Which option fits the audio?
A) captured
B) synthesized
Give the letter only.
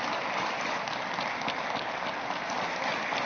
A